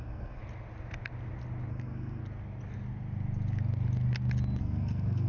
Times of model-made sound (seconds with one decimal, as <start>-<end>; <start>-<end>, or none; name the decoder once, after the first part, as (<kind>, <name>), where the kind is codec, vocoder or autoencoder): 0.0-0.4 (codec, SNAC); 1.7-2.2; 4.6-5.3

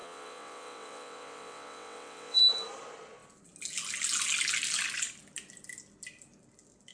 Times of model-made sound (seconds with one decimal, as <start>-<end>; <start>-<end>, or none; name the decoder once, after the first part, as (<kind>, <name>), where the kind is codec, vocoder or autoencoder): 0.0-2.4 (vocoder, WaveNeXt)

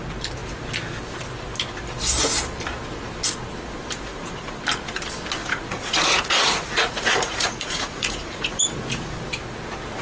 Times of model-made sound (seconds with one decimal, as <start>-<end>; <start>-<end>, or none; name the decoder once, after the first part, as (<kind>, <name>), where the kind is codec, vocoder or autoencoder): 4.1-4.6 (vocoder, Vocos); 5.4-8.6

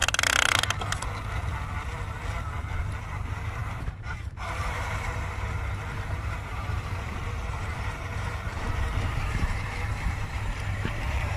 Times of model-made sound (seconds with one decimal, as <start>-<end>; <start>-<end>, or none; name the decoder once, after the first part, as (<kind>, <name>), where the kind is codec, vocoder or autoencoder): 3.0-11.4 (vocoder, BigVGAN v2)

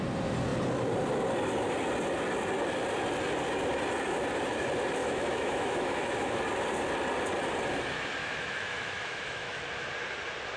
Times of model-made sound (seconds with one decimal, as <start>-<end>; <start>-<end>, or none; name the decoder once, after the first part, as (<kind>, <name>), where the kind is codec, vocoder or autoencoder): 5.0-6.4 (autoencoder, DAC-VAE); 8.2-9.6

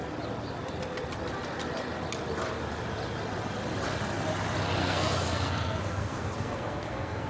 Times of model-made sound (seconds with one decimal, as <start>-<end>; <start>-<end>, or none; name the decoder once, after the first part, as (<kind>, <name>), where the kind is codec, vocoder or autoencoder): 4.8-7.3 (codec, SNAC)

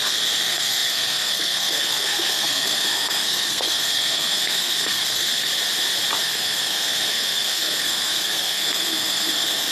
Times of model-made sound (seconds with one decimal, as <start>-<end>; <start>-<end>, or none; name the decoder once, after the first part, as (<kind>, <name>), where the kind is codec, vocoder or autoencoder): 0.0-5.5 (codec, SNAC); 6.2-9.7